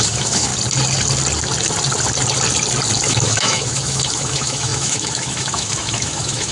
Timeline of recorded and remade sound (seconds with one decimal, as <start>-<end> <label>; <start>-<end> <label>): 0.0-0.5 remade; 0.5-3.1 recorded; 3.1-6.5 remade